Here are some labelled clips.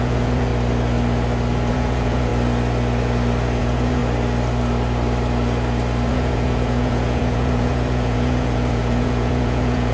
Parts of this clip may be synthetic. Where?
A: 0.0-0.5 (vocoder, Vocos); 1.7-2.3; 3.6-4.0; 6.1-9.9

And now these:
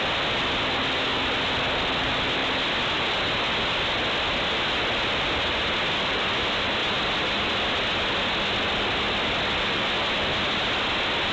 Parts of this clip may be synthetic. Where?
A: none

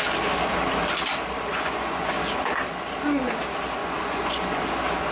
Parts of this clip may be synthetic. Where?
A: 1.5-2.1 (vocoder, Vocos); 3.8-4.6

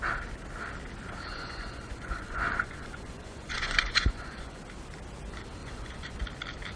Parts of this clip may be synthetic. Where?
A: 1.3-4.6 (vocoder, Vocos); 5.6-6.2

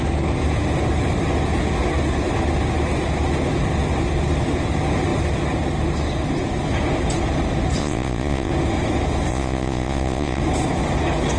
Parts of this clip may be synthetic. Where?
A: 7.8-8.5 (vocoder, Vocos); 9.3-10.4

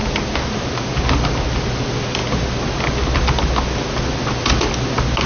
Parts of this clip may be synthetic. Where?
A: none

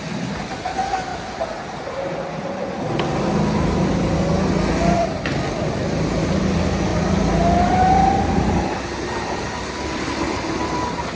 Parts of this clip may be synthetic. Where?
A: none